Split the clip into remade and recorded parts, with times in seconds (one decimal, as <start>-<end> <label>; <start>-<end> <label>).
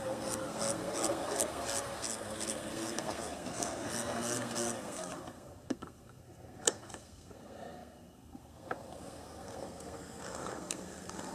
0.0-11.3 remade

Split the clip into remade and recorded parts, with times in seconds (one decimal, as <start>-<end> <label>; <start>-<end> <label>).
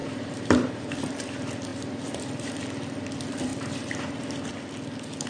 0.0-1.0 remade; 1.0-1.7 recorded; 1.7-2.2 remade; 2.2-3.5 recorded; 3.5-4.5 remade; 4.5-5.3 recorded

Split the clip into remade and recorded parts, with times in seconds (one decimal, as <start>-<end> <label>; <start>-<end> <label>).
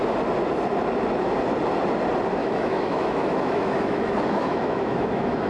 0.0-2.4 recorded; 2.4-5.5 remade